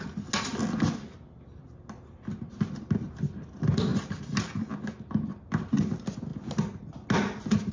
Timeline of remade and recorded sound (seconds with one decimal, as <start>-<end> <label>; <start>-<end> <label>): 0.0-7.7 recorded

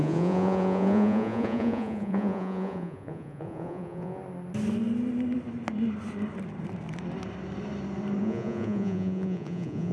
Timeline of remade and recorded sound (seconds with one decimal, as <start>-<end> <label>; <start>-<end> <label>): 0.0-4.2 remade; 4.2-8.2 recorded; 8.2-9.9 remade

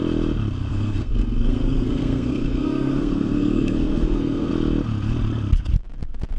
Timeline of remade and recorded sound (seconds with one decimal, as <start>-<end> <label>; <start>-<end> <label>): 0.0-0.7 recorded; 0.7-4.5 remade; 4.5-6.4 recorded

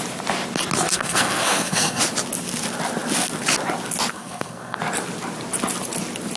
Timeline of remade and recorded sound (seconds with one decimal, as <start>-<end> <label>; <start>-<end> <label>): 0.0-0.9 recorded; 0.9-2.0 remade; 2.0-4.1 recorded; 4.1-4.8 remade; 4.8-6.4 recorded

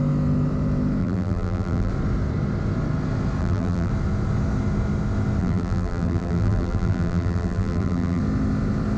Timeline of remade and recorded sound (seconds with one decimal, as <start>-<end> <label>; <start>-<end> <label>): 0.0-1.0 recorded; 1.0-1.9 remade; 1.9-3.4 recorded; 3.4-3.9 remade; 3.9-5.4 recorded; 5.4-8.2 remade; 8.2-9.0 recorded

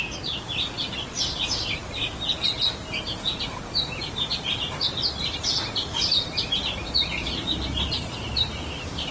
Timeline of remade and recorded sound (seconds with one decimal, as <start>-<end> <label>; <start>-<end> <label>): 0.0-5.8 recorded; 5.8-9.1 remade